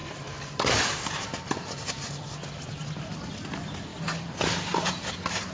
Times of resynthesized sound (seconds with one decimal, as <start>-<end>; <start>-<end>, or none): none